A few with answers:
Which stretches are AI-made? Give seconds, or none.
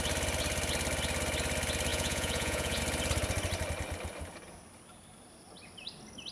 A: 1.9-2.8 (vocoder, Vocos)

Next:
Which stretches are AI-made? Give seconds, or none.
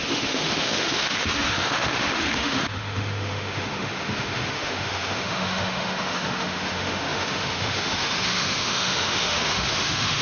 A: 0.0-10.2 (autoencoder, DAC-VAE)